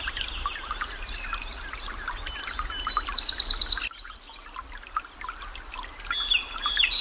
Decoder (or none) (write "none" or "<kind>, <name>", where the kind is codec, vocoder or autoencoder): none